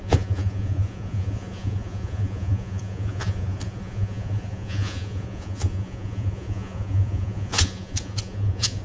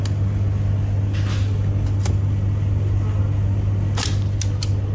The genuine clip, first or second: second